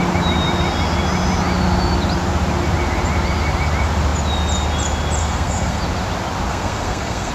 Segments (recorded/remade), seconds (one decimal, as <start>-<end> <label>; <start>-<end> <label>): 0.0-5.2 recorded; 5.2-5.8 remade; 5.8-6.5 recorded; 6.5-7.3 remade